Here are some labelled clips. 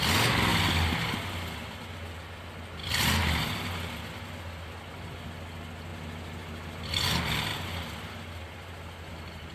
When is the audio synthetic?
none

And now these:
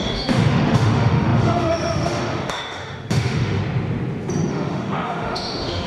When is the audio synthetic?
0.0-3.6 (autoencoder, DAC-VAE); 4.5-5.9

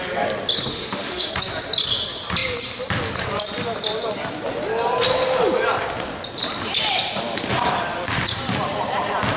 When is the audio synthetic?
0.7-1.3 (autoencoder, DAC-VAE)

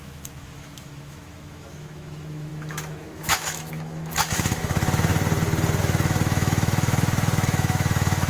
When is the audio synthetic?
0.0-5.1 (autoencoder, DAC-VAE); 5.8-8.3

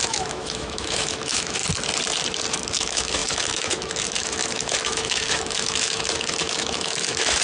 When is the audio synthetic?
0.0-1.6 (autoencoder, DAC-VAE); 2.5-7.4

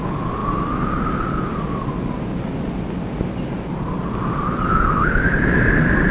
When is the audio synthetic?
none

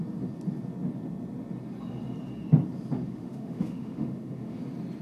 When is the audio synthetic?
3.0-4.6 (autoencoder, DAC-VAE)